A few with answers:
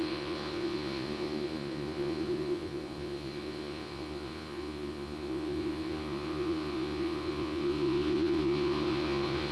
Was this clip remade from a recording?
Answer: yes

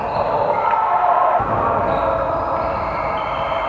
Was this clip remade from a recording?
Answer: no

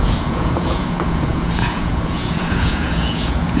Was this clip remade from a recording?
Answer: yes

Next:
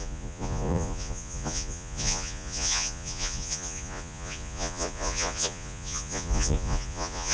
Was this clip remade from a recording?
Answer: yes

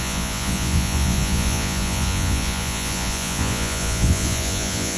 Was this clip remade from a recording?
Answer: yes